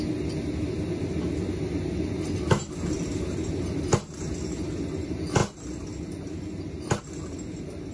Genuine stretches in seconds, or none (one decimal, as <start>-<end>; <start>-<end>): 0.0-7.9